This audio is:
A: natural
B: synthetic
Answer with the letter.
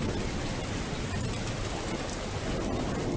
A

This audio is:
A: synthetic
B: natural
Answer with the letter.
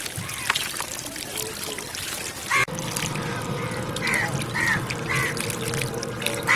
A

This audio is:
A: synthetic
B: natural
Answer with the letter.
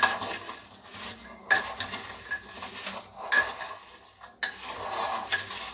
B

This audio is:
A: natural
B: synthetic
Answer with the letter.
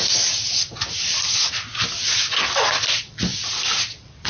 A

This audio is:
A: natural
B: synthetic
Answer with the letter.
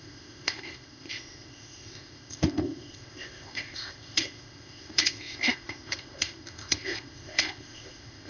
B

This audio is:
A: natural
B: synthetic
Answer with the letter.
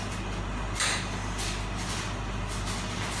A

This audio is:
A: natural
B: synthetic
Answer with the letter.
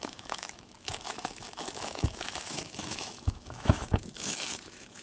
B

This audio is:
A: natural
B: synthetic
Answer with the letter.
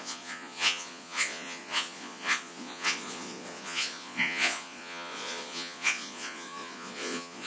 B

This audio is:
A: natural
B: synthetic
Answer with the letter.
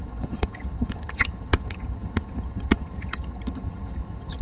B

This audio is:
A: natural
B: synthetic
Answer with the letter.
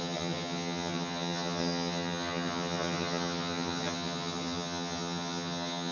B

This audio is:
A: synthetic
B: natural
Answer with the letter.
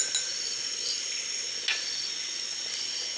B